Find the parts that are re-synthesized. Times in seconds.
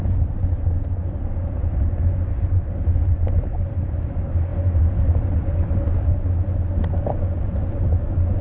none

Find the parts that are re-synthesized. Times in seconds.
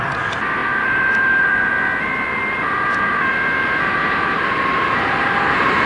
0.6-1.7 (vocoder, BigVGAN v2); 2.3-5.9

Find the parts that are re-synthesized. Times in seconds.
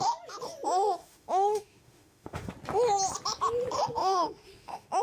1.0-2.5 (autoencoder, DAC-VAE); 4.0-5.0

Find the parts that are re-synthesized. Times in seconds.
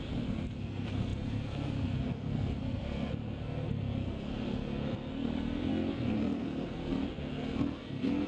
0.0-8.3 (codec, SNAC)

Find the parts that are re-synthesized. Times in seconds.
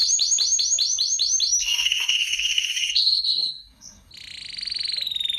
1.6-4.1 (codec, SNAC)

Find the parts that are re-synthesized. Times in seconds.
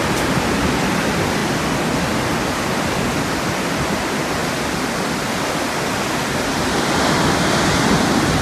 none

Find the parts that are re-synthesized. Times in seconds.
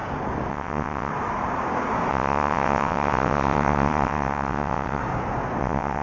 0.5-1.1 (vocoder, WaveNeXt); 2.1-5.0; 5.6-6.0